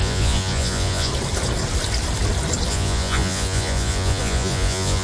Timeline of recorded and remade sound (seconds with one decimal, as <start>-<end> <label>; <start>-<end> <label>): 0.0-1.1 remade; 1.1-2.7 recorded; 2.7-5.0 remade